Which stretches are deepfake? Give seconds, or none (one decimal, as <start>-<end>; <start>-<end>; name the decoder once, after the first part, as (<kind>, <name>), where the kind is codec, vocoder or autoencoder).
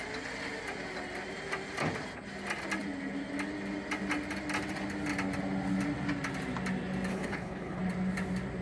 7.1-7.8 (codec, HILCodec)